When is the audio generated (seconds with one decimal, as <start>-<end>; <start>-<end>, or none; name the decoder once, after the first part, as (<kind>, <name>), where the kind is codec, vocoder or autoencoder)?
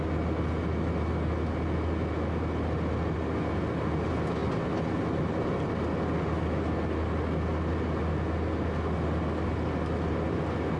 none